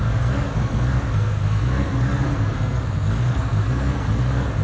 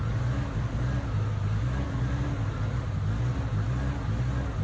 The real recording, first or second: second